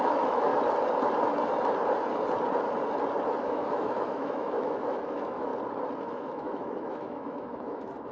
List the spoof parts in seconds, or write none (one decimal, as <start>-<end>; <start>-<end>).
0.0-0.5; 3.4-5.5; 6.1-8.1